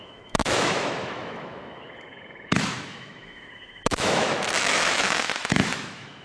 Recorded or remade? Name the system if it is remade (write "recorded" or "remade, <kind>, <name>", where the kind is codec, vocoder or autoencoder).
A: remade, autoencoder, DAC-VAE